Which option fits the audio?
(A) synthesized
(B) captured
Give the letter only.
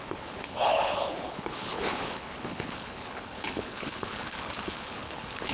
A